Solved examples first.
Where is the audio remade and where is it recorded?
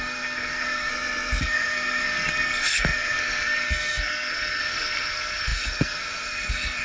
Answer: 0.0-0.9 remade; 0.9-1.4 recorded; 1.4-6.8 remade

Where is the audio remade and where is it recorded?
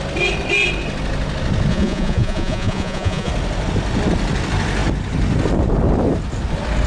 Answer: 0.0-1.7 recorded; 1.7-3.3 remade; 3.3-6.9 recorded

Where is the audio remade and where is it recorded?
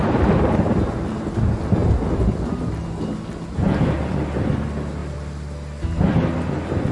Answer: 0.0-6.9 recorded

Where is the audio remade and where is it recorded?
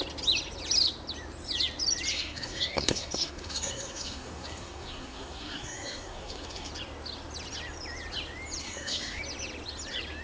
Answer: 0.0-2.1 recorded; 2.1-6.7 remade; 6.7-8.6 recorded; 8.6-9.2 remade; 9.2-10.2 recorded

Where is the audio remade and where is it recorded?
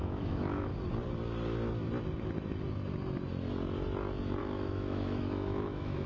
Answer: 0.0-0.7 remade; 0.7-4.4 recorded; 4.4-6.1 remade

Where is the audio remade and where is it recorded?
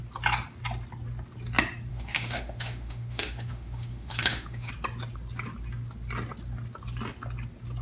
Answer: 0.0-1.9 recorded; 1.9-4.7 remade; 4.7-7.8 recorded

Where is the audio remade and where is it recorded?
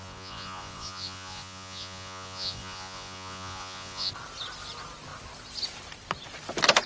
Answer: 0.0-4.1 remade; 4.1-6.9 recorded